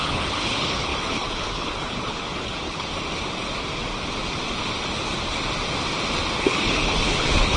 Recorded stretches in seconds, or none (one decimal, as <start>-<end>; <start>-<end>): 2.9-6.4